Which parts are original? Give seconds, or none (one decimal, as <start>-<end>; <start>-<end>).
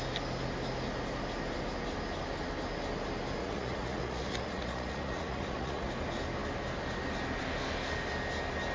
0.0-3.4; 5.9-8.7